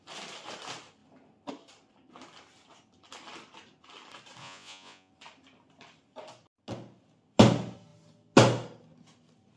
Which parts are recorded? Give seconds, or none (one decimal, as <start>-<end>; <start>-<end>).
0.0-4.4; 5.1-9.6